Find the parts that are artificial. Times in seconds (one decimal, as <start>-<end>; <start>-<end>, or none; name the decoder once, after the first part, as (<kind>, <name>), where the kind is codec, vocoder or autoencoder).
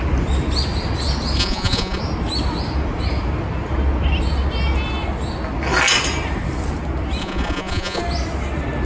1.4-2.0 (vocoder, Vocos); 7.2-8.0